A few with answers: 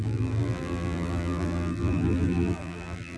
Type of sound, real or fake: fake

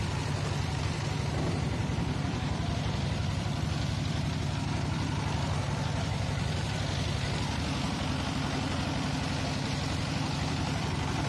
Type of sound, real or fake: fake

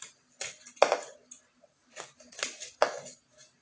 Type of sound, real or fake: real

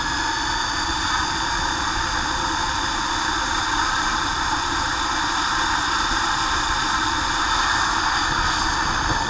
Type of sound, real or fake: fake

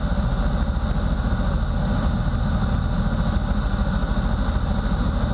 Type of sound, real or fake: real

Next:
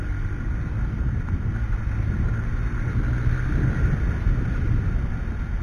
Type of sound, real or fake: real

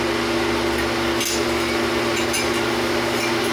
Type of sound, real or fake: real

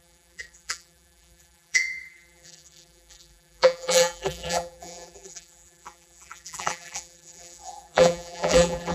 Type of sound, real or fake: fake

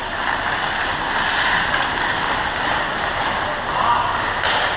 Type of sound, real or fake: real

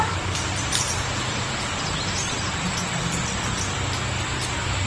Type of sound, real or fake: fake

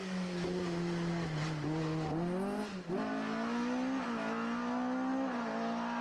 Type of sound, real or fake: real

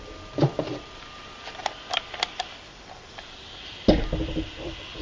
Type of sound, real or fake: fake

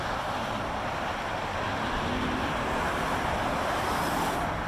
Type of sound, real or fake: real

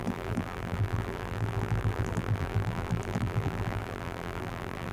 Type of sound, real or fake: fake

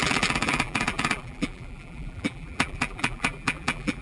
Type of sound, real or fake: fake